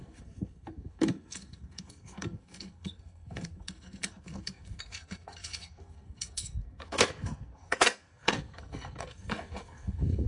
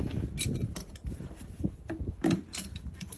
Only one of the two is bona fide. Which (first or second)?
second